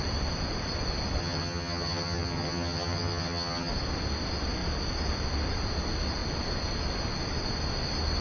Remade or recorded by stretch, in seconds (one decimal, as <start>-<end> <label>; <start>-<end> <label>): 0.0-1.2 recorded; 1.2-3.7 remade; 3.7-8.2 recorded